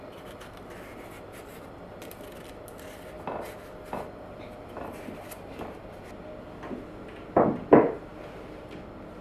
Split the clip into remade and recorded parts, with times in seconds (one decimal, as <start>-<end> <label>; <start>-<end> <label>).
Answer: 0.0-9.2 recorded